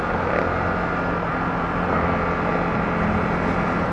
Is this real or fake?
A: real